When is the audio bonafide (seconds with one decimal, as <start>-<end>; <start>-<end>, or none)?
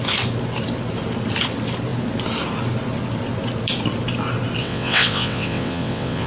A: 0.0-4.6